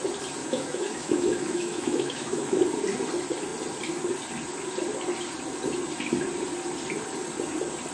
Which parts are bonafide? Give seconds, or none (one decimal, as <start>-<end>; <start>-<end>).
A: 0.0-0.4; 2.6-7.9